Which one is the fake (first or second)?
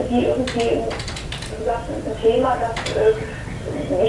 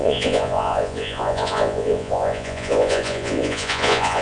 second